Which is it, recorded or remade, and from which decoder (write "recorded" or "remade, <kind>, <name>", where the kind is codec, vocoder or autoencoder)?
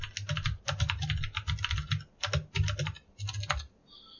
recorded